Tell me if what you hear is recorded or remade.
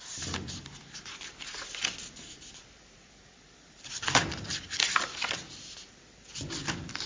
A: remade